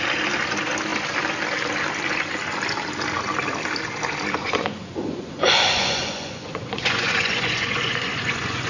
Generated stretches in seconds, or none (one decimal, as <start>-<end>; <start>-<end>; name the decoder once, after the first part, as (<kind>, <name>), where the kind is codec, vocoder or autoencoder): 4.4-8.7 (vocoder, Vocos)